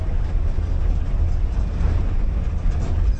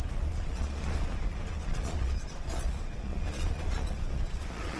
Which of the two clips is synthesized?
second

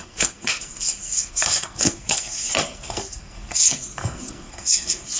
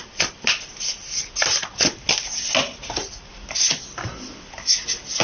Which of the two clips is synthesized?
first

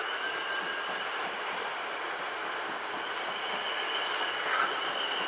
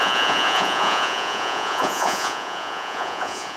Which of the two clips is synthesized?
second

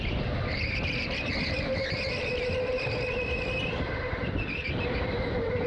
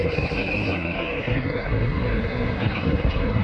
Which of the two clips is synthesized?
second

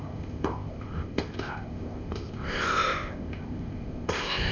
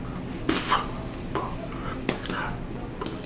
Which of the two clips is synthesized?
first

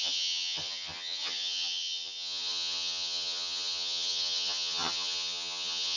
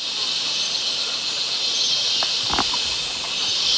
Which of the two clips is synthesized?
first